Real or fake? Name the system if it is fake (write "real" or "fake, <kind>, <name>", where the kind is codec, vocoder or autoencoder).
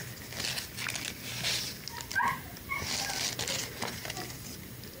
real